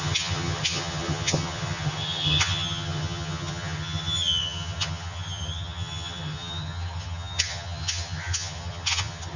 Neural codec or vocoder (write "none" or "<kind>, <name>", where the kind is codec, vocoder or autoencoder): vocoder, HiFi-GAN